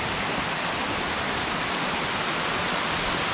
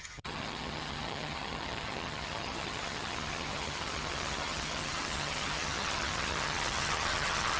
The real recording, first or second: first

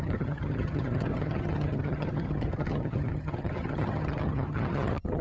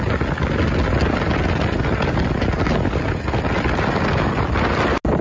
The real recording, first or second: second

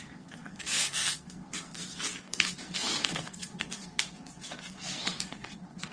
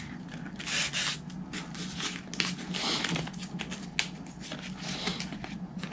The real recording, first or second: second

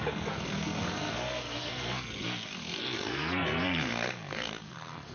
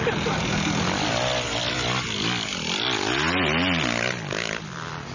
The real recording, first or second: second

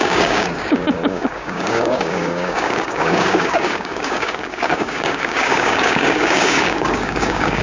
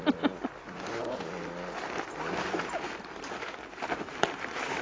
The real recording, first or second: second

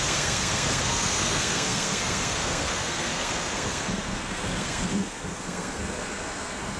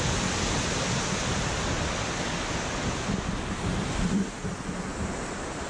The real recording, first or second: second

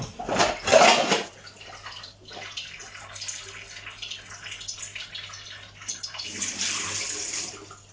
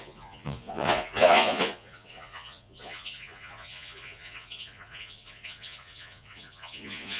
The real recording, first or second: first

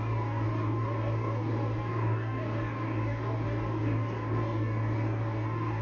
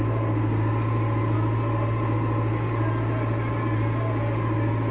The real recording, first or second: second